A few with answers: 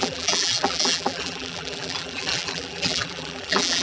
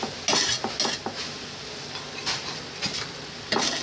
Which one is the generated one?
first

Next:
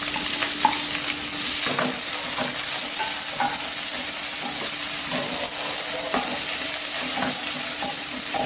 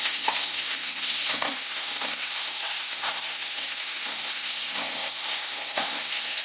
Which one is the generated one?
second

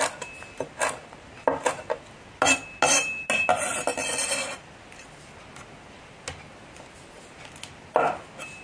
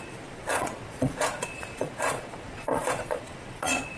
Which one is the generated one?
second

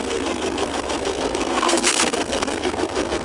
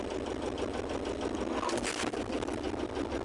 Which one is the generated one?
first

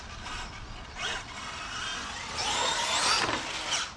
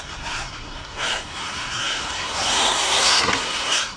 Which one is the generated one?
second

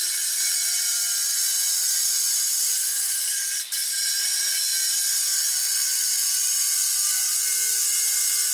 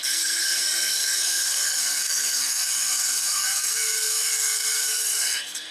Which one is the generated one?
second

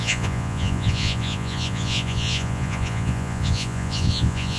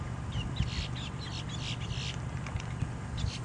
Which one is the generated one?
first